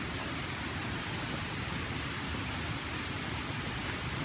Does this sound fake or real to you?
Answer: real